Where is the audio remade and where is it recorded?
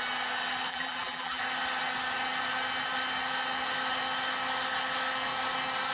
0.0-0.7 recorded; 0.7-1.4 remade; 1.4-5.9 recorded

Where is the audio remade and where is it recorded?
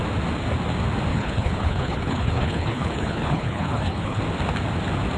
0.0-1.1 recorded; 1.1-4.2 remade; 4.2-5.2 recorded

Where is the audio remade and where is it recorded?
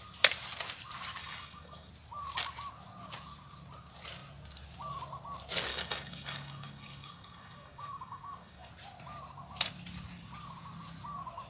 0.0-1.2 recorded; 1.2-1.9 remade; 1.9-5.7 recorded; 5.7-8.7 remade; 8.7-11.5 recorded